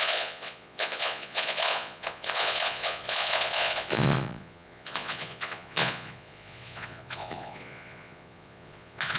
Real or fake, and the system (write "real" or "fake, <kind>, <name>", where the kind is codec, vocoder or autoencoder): fake, vocoder, Vocos